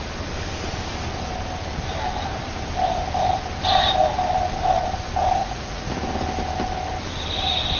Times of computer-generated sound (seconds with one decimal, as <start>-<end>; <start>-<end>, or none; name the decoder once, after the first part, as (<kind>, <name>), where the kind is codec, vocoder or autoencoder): 5.4-6.0 (vocoder, Vocos)